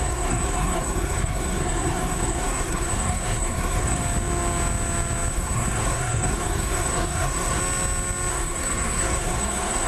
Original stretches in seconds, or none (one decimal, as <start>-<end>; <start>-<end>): 4.0-5.3; 7.6-8.3